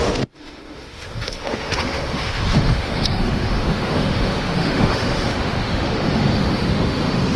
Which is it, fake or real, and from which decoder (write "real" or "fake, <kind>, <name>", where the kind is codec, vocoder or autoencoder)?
fake, autoencoder, DAC-VAE